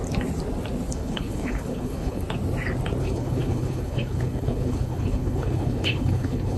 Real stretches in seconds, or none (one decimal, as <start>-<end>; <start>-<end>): 0.0-0.9; 2.2-3.0